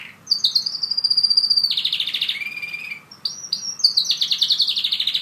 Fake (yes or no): no